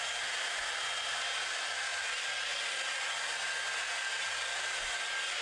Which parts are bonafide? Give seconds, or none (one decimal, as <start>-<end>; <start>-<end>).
0.0-5.4